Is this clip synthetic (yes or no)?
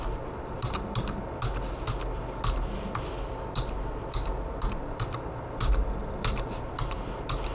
no